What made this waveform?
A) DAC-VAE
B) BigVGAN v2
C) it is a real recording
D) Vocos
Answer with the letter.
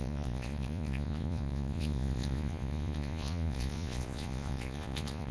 D